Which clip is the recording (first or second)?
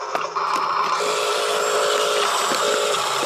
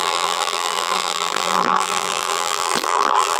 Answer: first